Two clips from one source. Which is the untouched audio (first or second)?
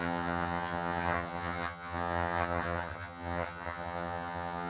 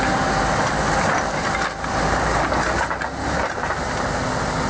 second